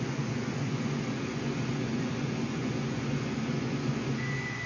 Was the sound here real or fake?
fake